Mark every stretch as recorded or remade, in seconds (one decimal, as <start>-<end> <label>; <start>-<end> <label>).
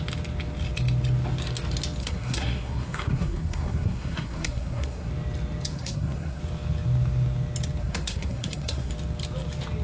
0.0-2.0 recorded; 2.0-5.1 remade; 5.1-5.7 recorded; 5.7-6.4 remade; 6.4-7.8 recorded; 7.8-8.9 remade; 8.9-9.8 recorded